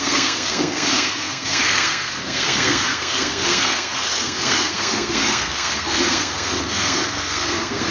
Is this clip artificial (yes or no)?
yes